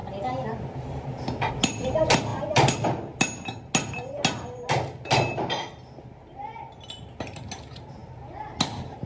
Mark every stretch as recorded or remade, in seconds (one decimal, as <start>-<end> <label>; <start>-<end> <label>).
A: 0.0-9.1 recorded